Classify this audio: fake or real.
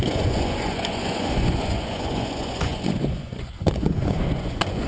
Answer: fake